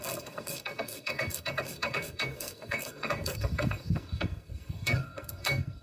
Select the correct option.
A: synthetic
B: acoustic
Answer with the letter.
A